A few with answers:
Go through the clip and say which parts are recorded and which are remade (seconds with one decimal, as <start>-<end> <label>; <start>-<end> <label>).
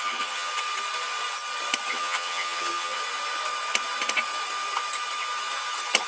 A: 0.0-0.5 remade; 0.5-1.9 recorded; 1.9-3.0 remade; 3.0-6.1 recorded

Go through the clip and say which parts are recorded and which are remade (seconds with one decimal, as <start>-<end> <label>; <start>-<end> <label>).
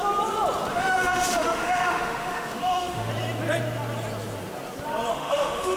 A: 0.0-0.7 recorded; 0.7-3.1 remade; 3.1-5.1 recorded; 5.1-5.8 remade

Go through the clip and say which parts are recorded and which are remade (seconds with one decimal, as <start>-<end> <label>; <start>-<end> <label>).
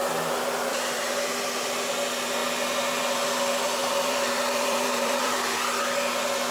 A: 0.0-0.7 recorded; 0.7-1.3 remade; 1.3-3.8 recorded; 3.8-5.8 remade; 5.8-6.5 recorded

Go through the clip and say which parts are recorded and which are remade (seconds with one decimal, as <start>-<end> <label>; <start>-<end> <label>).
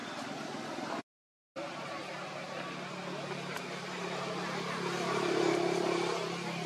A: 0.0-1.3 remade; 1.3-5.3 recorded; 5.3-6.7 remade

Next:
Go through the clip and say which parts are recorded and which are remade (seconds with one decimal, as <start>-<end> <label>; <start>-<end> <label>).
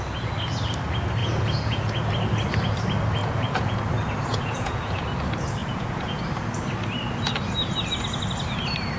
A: 0.0-1.2 recorded; 1.2-2.1 remade; 2.1-3.2 recorded; 3.2-3.8 remade; 3.8-4.3 recorded; 4.3-5.0 remade; 5.0-5.6 recorded; 5.6-6.2 remade; 6.2-9.0 recorded